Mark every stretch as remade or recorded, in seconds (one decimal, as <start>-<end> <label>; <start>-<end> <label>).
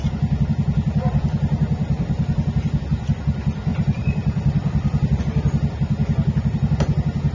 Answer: 0.0-3.7 recorded; 3.7-5.2 remade; 5.2-7.3 recorded